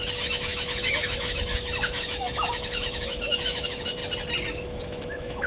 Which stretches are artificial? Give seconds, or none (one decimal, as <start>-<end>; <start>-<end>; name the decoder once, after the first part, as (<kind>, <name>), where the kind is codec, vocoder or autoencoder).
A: 0.0-4.0 (autoencoder, DAC-VAE); 4.5-5.5